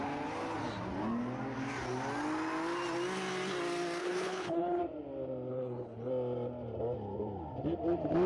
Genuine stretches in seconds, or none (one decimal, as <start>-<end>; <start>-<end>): 0.0-4.0; 4.8-5.5; 6.1-8.3